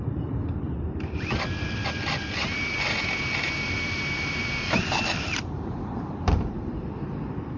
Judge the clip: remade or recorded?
remade